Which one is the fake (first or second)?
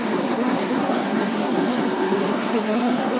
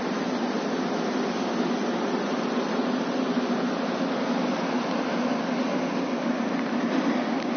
first